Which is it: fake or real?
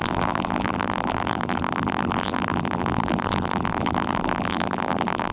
fake